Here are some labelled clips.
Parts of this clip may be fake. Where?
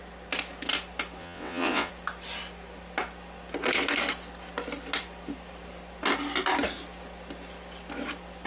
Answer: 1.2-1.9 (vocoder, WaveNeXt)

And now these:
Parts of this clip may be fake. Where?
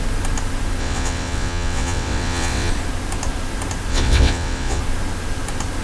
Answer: 0.8-2.7 (vocoder, WaveNeXt); 3.9-4.8